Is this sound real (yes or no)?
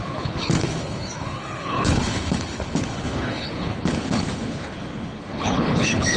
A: no